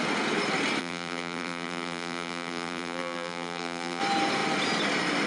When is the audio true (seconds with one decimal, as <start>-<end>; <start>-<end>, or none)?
0.0-0.8; 4.0-5.3